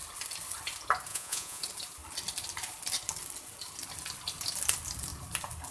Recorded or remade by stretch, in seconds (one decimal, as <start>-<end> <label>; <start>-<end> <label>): 0.0-1.1 recorded; 1.1-1.6 remade; 1.6-5.7 recorded

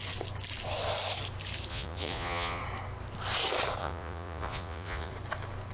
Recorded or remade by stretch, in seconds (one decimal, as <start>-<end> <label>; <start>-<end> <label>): 0.0-1.7 recorded; 1.7-2.6 remade; 2.6-3.8 recorded; 3.8-5.1 remade; 5.1-5.7 recorded

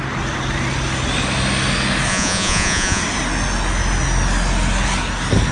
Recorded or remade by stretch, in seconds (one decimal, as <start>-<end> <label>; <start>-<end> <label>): 0.0-2.1 recorded; 2.1-3.0 remade; 3.0-5.5 recorded

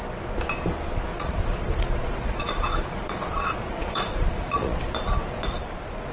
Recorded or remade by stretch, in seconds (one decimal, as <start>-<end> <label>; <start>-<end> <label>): 0.0-1.1 recorded; 1.1-4.8 remade; 4.8-6.1 recorded